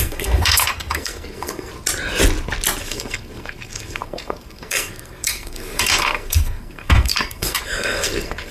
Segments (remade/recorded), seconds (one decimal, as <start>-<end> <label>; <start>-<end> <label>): 0.0-1.7 remade; 1.7-2.8 recorded; 2.8-8.5 remade